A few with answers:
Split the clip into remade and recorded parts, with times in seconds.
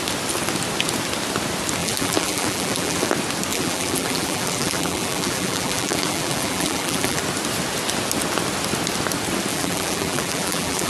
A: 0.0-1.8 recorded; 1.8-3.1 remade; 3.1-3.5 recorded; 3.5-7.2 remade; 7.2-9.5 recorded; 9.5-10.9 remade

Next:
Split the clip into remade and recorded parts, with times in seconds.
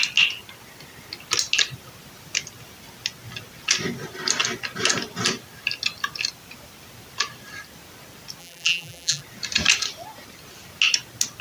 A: 0.0-8.4 recorded; 8.4-9.2 remade; 9.2-11.4 recorded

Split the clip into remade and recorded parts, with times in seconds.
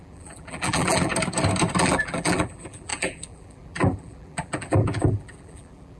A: 0.0-1.1 remade; 1.1-1.8 recorded; 1.8-6.0 remade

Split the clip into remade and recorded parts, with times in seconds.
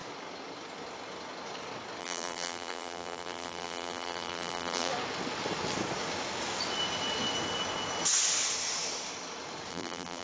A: 0.0-2.0 recorded; 2.0-4.9 remade; 4.9-9.7 recorded; 9.7-10.2 remade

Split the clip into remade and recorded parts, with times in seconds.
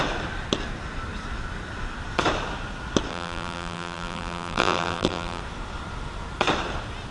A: 0.0-3.1 recorded; 3.1-5.4 remade; 5.4-7.1 recorded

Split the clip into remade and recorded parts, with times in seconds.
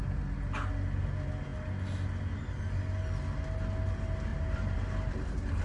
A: 0.0-4.3 recorded; 4.3-5.6 remade